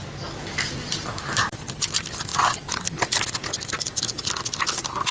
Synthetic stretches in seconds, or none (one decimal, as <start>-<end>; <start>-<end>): 0.0-1.0